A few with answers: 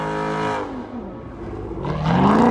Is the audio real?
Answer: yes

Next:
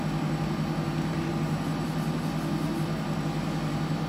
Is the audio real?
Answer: yes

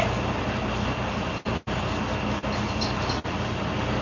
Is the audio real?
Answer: yes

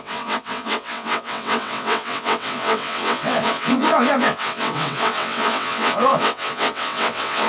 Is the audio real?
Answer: no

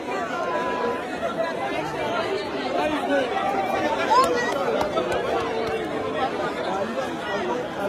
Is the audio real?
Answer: yes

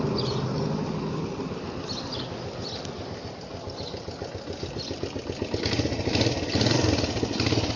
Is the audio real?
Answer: yes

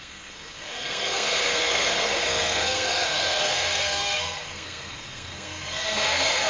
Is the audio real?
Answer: no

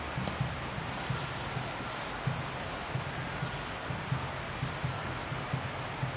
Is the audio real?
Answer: yes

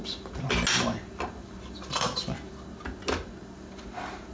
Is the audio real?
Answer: yes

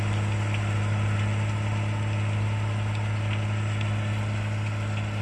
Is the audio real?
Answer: yes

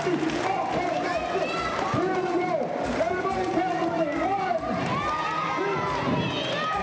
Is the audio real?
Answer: yes